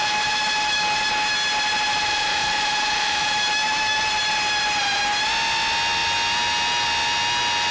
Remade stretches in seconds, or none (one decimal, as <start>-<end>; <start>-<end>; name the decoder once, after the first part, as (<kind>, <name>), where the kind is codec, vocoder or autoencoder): 0.0-1.1 (autoencoder, DAC-VAE); 1.9-4.1